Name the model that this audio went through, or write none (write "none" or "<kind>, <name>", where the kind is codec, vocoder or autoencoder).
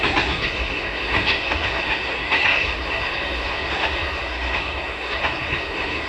codec, SNAC